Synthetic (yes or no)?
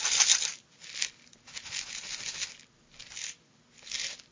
no